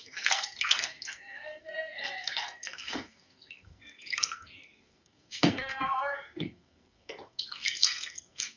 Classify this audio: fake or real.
fake